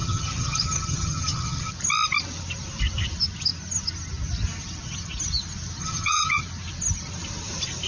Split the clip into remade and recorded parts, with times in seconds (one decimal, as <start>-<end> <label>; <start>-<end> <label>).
0.0-1.7 remade; 1.7-5.8 recorded; 5.8-6.4 remade; 6.4-7.9 recorded